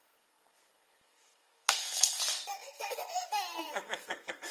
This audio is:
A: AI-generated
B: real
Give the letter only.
A